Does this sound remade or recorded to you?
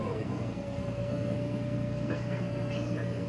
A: remade